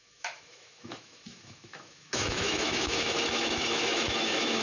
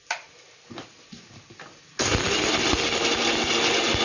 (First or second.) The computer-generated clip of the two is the first